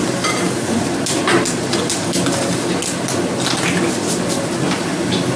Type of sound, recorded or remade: recorded